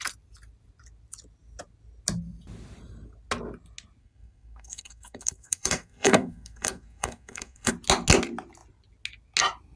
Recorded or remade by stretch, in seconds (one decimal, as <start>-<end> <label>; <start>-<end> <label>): 0.0-4.0 recorded; 4.0-7.7 remade; 7.7-9.8 recorded